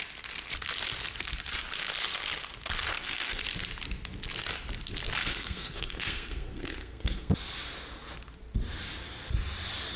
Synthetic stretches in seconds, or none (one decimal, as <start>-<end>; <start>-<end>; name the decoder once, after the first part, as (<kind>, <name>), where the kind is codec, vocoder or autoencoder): 2.9-3.4 (codec, SNAC); 5.2-7.3